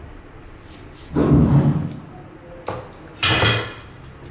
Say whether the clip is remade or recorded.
recorded